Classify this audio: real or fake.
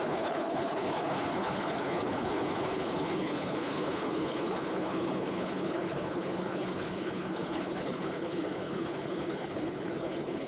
fake